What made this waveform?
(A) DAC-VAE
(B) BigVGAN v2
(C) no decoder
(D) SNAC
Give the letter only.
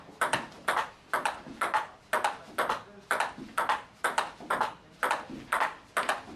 C